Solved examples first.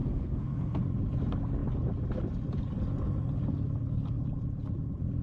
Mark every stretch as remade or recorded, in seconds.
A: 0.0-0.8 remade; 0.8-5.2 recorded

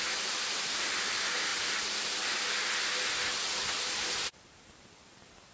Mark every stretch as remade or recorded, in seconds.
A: 0.0-5.5 recorded

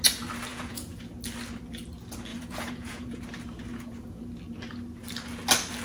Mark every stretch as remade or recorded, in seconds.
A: 0.0-0.5 recorded; 0.5-1.1 remade; 1.1-2.3 recorded; 2.3-3.2 remade; 3.2-3.7 recorded; 3.7-4.2 remade; 4.2-5.8 recorded

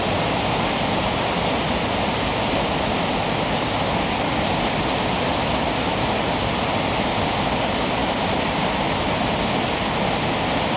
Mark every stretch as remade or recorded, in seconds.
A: 0.0-8.0 recorded; 8.0-8.7 remade; 8.7-10.8 recorded

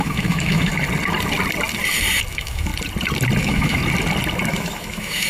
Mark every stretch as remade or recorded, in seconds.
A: 0.0-0.7 remade; 0.7-2.3 recorded; 2.3-2.7 remade; 2.7-3.4 recorded; 3.4-3.8 remade; 3.8-4.5 recorded; 4.5-5.3 remade

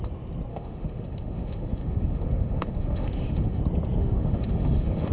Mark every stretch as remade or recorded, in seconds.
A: 0.0-0.5 recorded; 0.5-3.6 remade; 3.6-4.0 recorded; 4.0-5.1 remade